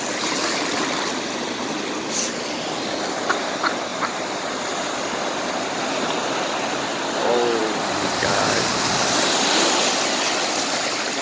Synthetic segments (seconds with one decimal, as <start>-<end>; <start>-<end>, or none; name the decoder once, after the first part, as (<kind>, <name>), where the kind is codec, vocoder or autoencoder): none

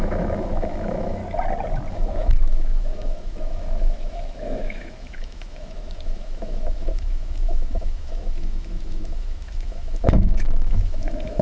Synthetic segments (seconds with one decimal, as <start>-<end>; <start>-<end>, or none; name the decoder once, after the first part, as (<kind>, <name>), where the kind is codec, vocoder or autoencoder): 0.0-1.2 (autoencoder, DAC-VAE); 1.9-11.4

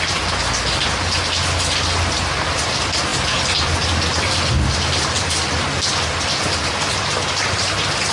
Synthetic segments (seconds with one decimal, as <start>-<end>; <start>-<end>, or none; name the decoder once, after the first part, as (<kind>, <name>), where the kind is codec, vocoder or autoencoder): none

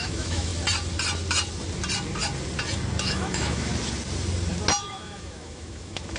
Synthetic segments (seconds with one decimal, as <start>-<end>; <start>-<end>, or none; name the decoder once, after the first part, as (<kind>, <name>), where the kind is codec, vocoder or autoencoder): 0.0-0.5 (autoencoder, DAC-VAE); 3.0-3.7; 4.8-6.2

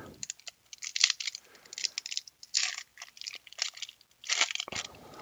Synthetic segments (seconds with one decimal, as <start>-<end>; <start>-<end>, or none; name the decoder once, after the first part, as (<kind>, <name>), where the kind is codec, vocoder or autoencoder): none

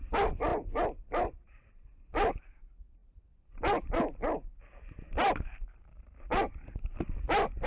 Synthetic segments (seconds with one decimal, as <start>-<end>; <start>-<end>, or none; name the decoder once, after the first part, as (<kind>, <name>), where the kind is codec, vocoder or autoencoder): none

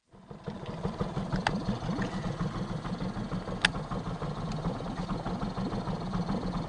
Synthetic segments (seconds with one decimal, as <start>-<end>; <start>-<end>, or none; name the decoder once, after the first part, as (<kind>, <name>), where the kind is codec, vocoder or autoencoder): none